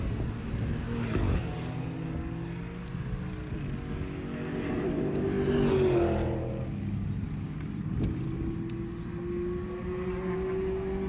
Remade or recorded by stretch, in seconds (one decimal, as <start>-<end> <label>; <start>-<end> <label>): 0.0-11.1 recorded

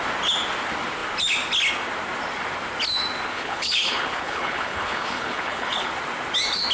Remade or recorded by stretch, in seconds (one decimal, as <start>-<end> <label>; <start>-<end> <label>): 0.0-3.3 recorded; 3.3-5.9 remade; 5.9-6.7 recorded

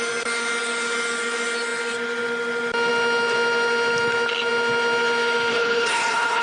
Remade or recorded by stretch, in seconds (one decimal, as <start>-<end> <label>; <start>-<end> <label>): 0.0-5.5 recorded; 5.5-6.4 remade

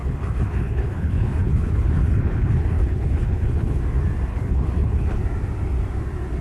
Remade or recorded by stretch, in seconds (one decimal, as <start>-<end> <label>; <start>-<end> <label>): 0.0-3.8 remade; 3.8-4.3 recorded; 4.3-5.2 remade; 5.2-6.4 recorded

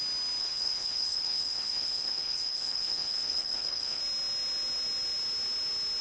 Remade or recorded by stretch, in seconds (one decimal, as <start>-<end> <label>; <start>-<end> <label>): 0.0-0.4 recorded; 0.4-4.0 remade; 4.0-6.0 recorded

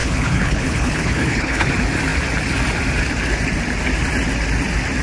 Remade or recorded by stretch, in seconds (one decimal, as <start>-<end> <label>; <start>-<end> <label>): 0.0-1.7 remade; 1.7-5.0 recorded

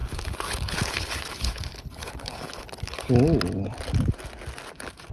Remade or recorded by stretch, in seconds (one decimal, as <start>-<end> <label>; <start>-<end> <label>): 0.0-3.1 remade; 3.1-5.1 recorded

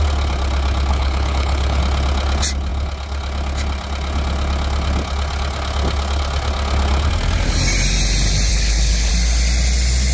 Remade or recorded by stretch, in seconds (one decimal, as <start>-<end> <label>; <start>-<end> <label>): 0.0-0.9 recorded; 0.9-1.8 remade; 1.8-8.5 recorded; 8.5-9.1 remade; 9.1-10.1 recorded